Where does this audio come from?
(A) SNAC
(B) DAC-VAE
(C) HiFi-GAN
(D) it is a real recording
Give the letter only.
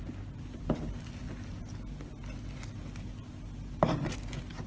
D